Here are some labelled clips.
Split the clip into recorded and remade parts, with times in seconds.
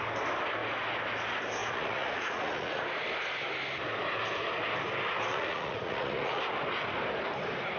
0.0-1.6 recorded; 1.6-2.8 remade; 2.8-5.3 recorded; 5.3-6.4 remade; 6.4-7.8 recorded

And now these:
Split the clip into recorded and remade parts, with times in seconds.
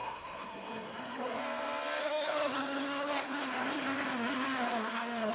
0.0-1.4 remade; 1.4-2.0 recorded; 2.0-5.3 remade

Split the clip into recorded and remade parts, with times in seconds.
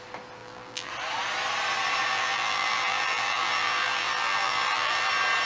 0.0-0.4 recorded; 0.4-0.9 remade; 0.9-2.1 recorded; 2.1-5.1 remade; 5.1-5.5 recorded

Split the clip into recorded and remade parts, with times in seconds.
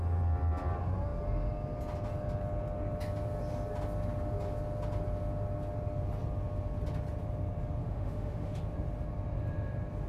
0.0-7.8 recorded; 7.8-8.6 remade; 8.6-10.1 recorded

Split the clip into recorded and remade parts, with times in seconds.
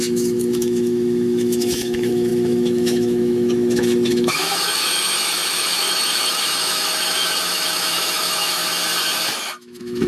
0.0-8.6 remade; 8.6-9.4 recorded; 9.4-10.1 remade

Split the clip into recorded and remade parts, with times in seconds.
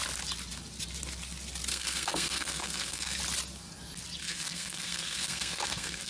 0.0-1.7 recorded; 1.7-3.2 remade; 3.2-4.2 recorded; 4.2-6.1 remade